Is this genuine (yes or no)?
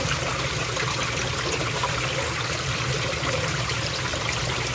yes